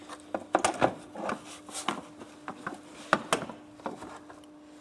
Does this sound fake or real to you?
real